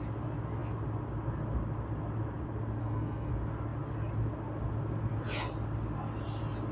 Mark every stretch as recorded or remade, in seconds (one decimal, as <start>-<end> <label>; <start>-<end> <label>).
0.0-2.8 recorded; 2.8-3.3 remade; 3.3-6.7 recorded